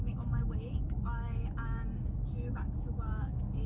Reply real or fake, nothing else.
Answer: fake